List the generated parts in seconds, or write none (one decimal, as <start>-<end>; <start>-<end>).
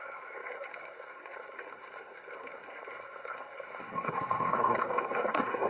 0.0-5.7